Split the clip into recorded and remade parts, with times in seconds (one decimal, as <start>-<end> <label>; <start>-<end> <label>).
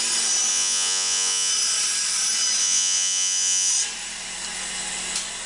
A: 0.0-0.5 recorded; 0.5-1.5 remade; 1.5-2.6 recorded; 2.6-3.7 remade; 3.7-5.5 recorded